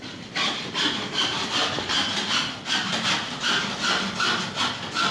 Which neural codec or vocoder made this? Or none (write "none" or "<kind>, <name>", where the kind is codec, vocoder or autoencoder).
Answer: none